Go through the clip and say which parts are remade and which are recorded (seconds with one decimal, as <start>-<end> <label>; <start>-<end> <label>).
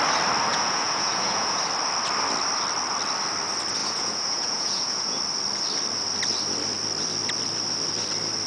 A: 0.0-0.5 recorded; 0.5-1.6 remade; 1.6-3.8 recorded; 3.8-5.2 remade; 5.2-8.5 recorded